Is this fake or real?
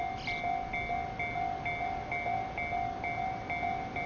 real